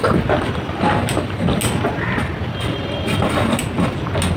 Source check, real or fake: real